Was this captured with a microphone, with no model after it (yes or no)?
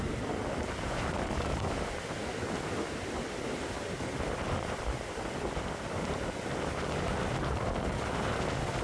yes